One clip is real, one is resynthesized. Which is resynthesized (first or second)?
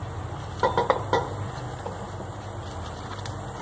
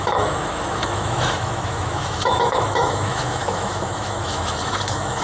second